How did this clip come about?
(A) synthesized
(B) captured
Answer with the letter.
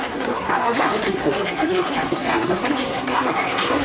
A